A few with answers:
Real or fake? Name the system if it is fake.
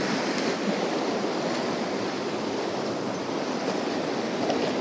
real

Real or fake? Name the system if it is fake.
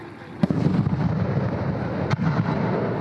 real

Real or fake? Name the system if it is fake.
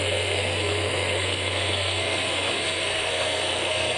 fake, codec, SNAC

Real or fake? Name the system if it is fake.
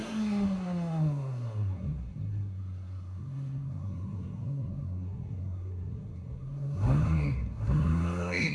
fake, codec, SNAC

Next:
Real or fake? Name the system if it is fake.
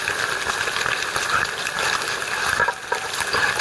real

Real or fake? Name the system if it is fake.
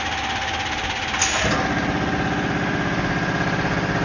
real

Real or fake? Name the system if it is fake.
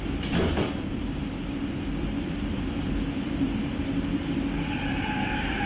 fake, vocoder, BigVGAN v2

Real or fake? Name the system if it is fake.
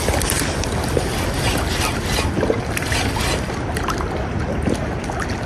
real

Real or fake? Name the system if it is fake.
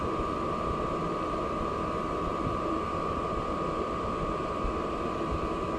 fake, vocoder, BigVGAN v2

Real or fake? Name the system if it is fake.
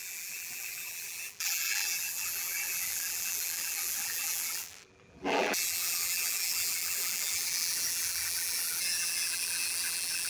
fake, vocoder, BigVGAN v2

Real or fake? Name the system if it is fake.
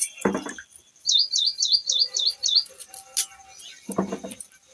real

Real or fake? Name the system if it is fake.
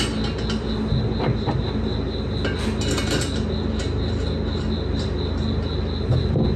real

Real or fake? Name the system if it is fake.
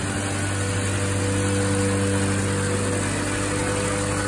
real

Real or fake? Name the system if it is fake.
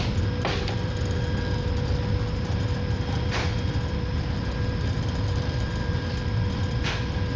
real